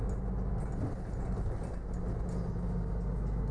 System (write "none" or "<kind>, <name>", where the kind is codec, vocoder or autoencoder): none